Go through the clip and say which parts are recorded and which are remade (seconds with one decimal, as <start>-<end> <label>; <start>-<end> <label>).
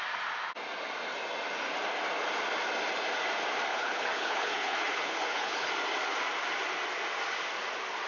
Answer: 0.0-3.7 recorded; 3.7-5.7 remade; 5.7-8.1 recorded